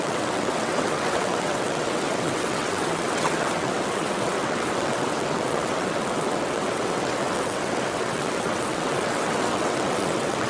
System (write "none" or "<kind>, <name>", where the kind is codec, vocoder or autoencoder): vocoder, WaveNeXt